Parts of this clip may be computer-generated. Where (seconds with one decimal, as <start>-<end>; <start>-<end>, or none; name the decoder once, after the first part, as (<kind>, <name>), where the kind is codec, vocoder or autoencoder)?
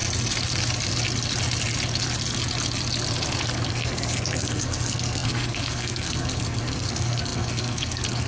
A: 3.7-8.3 (codec, SNAC)